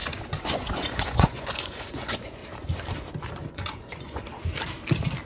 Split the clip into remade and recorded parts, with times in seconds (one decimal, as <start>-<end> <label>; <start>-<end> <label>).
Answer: 0.0-2.4 remade; 2.4-3.5 recorded; 3.5-4.2 remade; 4.2-5.3 recorded